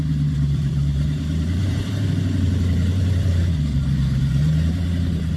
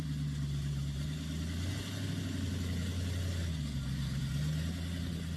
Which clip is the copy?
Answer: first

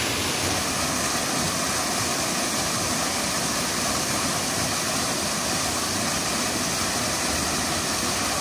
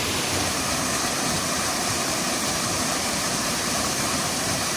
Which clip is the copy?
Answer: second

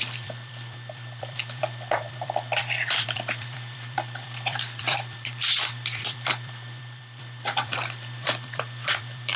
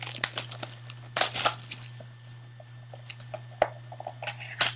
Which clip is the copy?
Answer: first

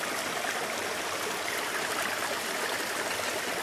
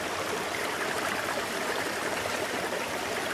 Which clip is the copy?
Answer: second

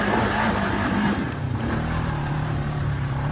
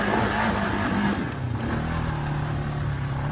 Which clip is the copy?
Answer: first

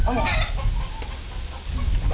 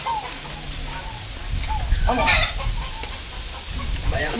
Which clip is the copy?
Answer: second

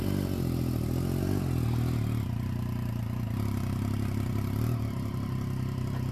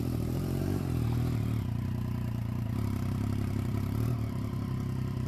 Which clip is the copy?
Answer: second